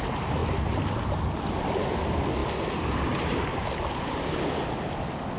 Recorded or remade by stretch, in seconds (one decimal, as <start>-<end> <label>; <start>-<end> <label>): 0.0-5.4 recorded